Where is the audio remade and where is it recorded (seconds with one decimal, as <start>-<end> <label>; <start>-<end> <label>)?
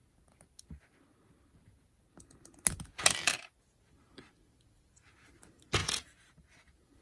0.0-5.8 recorded; 5.8-7.0 remade